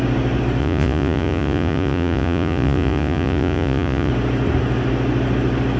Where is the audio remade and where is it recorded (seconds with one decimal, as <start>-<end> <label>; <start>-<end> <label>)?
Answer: 0.0-0.6 recorded; 0.6-4.1 remade; 4.1-5.8 recorded